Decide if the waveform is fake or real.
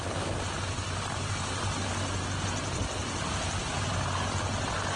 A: real